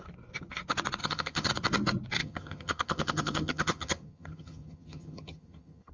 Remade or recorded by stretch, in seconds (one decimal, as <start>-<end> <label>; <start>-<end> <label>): 0.0-1.0 recorded; 1.0-1.5 remade; 1.5-2.2 recorded; 2.2-5.9 remade